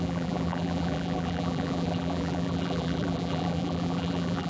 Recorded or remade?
remade